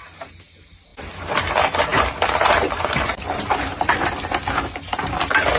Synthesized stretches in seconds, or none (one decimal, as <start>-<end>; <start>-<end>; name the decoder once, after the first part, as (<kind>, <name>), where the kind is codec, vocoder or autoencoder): 1.9-4.1 (vocoder, BigVGAN v2)